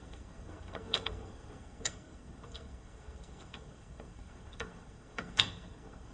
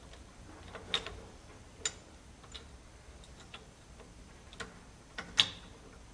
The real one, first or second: second